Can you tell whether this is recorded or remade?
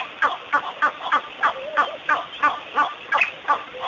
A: recorded